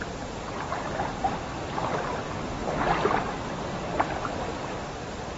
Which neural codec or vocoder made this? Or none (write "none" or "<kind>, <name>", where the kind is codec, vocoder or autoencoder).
none